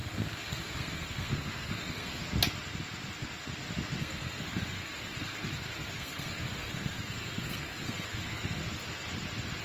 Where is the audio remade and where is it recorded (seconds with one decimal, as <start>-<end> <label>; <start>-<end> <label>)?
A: 0.0-2.2 remade; 2.2-4.0 recorded; 4.0-8.6 remade; 8.6-9.6 recorded